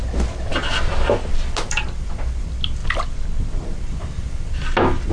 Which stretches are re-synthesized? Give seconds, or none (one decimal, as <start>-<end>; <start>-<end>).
none